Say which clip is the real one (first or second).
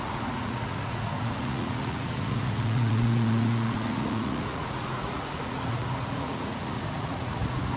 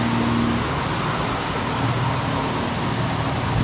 second